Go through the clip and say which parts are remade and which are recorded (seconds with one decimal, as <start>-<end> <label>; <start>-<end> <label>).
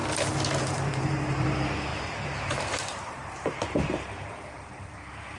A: 0.0-0.6 recorded; 0.6-5.4 remade